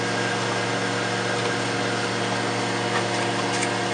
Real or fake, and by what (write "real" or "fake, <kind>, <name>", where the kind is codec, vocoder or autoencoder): real